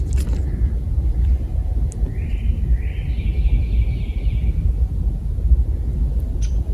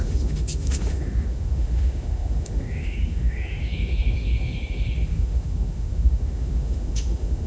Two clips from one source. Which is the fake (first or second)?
second